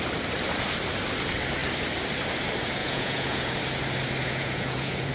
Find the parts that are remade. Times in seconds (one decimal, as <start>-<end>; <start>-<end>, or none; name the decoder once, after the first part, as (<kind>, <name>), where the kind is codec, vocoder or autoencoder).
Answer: 2.8-3.5 (vocoder, Vocos); 4.2-5.1